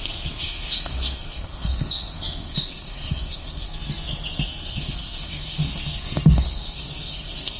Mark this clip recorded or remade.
remade